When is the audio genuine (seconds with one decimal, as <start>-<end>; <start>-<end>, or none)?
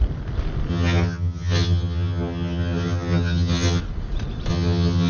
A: 0.0-0.7; 3.8-4.5